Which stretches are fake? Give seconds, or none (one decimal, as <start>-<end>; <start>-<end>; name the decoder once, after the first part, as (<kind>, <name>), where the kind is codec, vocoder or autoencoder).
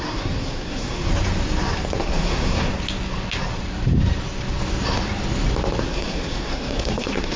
0.0-1.1 (codec, SNAC); 2.0-2.7; 5.8-7.4